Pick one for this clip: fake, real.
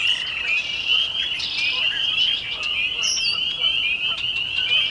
real